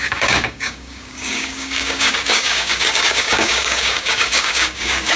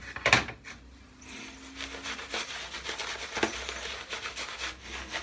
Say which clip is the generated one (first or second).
first